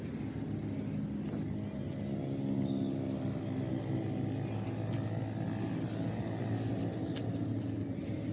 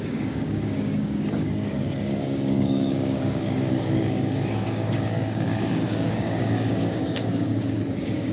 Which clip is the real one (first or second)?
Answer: first